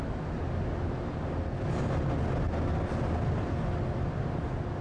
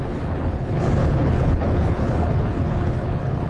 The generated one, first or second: second